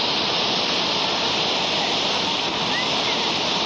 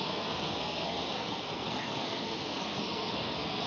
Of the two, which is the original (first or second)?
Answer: first